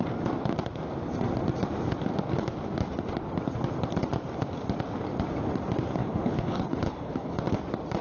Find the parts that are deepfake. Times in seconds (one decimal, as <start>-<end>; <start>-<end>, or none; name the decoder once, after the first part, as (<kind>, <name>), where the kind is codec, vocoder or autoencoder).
6.0-7.4 (codec, HILCodec)

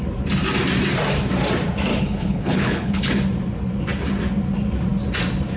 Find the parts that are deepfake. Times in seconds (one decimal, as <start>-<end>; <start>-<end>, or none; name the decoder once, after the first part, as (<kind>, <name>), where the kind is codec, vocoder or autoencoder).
1.9-3.1 (codec, HILCodec)

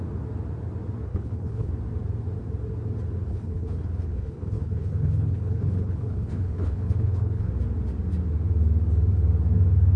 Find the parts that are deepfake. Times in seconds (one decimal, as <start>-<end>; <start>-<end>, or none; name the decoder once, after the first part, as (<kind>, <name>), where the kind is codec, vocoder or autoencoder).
1.1-1.7 (codec, HILCodec); 3.3-7.5

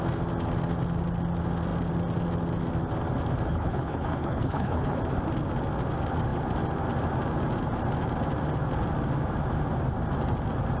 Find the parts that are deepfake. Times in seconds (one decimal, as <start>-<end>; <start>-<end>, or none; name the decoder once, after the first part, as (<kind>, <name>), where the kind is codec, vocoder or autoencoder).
3.5-5.0 (codec, HILCodec)

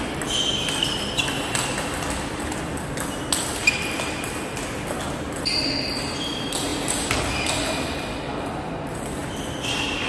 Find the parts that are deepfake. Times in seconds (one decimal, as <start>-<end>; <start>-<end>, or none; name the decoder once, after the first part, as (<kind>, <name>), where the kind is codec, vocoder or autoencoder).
none